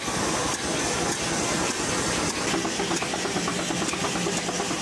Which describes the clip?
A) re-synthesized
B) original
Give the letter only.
B